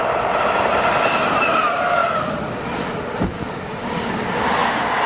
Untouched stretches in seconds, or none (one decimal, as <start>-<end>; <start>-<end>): 0.0-5.1